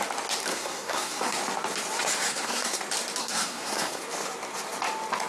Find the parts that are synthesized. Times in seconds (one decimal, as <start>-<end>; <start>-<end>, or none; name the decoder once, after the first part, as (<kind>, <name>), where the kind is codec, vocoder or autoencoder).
0.5-1.4 (codec, SNAC); 2.3-2.8; 3.2-4.0